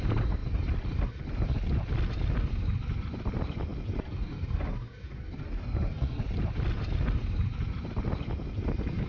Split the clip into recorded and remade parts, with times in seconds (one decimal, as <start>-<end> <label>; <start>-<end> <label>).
0.0-0.4 remade; 0.4-2.1 recorded; 2.1-9.1 remade